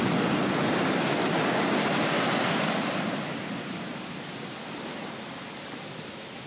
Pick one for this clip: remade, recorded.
recorded